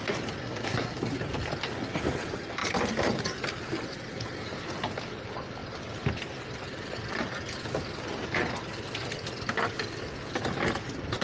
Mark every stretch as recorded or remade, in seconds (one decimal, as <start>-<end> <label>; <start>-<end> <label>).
0.0-0.4 recorded; 0.4-1.0 remade; 1.0-11.2 recorded